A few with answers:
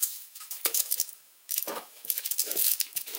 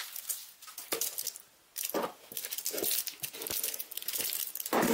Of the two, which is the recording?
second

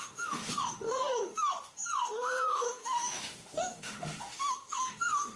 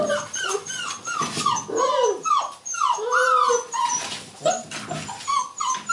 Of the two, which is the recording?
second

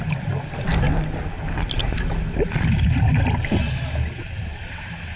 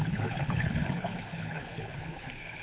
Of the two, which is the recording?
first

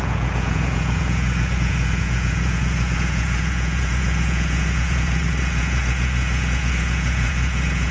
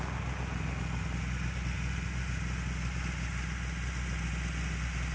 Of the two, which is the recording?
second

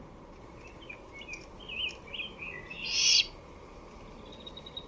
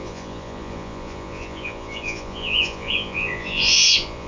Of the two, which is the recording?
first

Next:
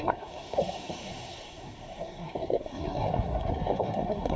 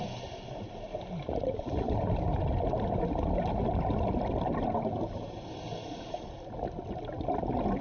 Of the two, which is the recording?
second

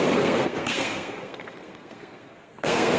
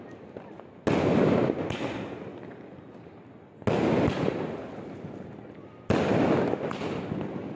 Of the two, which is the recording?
second